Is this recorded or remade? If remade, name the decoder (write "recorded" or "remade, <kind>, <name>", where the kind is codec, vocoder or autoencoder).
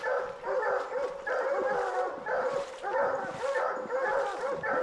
recorded